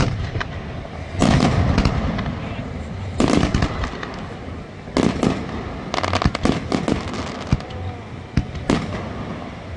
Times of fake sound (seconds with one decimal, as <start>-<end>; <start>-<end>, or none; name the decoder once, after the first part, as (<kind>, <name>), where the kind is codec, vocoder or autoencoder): none